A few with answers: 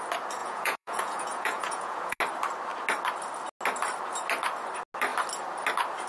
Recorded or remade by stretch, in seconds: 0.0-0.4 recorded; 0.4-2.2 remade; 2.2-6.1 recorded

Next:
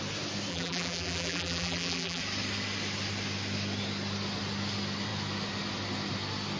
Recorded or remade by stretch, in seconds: 0.0-0.5 recorded; 0.5-2.2 remade; 2.2-6.6 recorded